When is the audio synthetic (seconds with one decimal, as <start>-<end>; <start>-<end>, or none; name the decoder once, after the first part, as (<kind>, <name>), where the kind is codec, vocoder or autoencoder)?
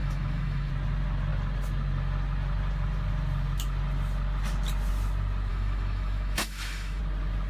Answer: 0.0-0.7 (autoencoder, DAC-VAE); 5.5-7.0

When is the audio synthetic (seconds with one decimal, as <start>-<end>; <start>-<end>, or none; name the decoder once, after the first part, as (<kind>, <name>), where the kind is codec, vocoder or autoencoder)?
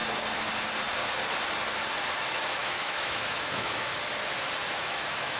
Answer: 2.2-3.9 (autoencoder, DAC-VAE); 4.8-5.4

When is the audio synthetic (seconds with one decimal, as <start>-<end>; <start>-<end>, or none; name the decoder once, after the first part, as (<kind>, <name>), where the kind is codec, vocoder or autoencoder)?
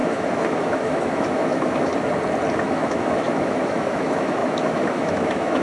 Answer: 0.0-1.9 (autoencoder, DAC-VAE); 2.5-5.6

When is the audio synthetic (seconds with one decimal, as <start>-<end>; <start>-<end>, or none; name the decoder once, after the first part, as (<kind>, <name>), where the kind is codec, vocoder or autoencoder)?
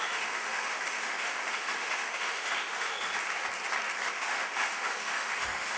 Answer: 0.0-3.1 (autoencoder, DAC-VAE); 4.1-5.8